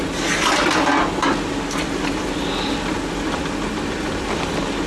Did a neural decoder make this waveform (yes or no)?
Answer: no